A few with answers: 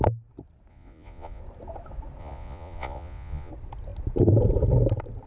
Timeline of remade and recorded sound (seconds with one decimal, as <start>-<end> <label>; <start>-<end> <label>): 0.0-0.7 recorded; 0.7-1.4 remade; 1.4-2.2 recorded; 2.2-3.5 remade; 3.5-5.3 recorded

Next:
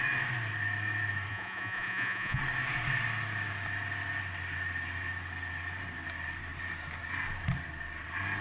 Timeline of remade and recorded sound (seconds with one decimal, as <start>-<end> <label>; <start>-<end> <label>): 0.0-1.3 recorded; 1.3-2.4 remade; 2.4-8.4 recorded

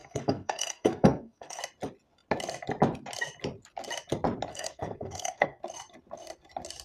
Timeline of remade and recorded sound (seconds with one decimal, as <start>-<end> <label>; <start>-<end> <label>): 0.0-1.6 remade; 1.6-4.5 recorded; 4.5-5.6 remade; 5.6-6.8 recorded

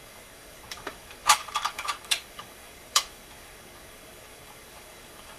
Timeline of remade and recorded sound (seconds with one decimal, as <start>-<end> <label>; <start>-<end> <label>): 0.0-5.4 remade